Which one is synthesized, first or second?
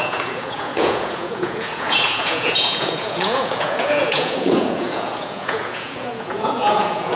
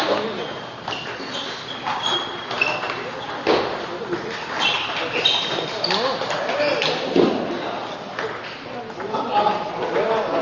first